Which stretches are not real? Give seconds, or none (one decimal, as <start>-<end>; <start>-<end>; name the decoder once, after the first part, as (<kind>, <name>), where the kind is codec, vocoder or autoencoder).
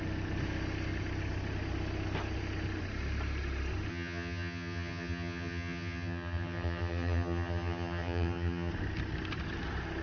3.9-8.7 (vocoder, HiFi-GAN)